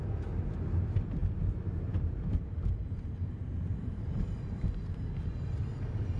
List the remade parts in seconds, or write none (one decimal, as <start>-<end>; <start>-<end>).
1.2-4.9